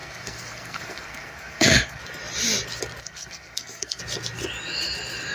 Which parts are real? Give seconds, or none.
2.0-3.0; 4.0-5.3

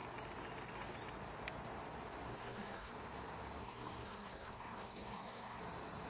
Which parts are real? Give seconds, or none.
0.0-2.3; 2.9-3.6; 5.6-6.1

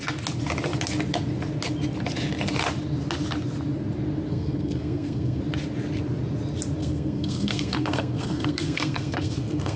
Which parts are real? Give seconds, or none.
0.0-4.3; 5.4-6.8

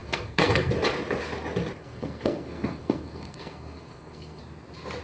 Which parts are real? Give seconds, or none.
0.7-1.8; 4.4-5.0

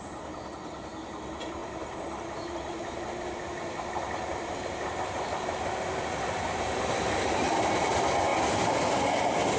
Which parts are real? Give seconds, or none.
0.0-9.6

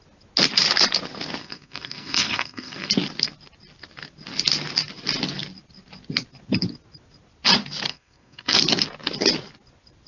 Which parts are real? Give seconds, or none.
0.0-1.4; 2.9-7.9; 8.6-10.1

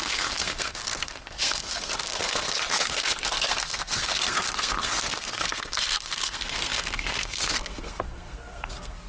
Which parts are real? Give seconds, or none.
none

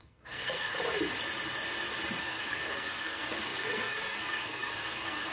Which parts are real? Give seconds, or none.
0.7-2.2